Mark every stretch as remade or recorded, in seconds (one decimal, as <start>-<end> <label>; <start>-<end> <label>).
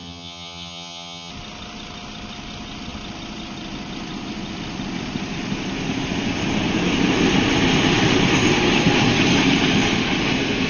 0.0-1.3 remade; 1.3-10.7 recorded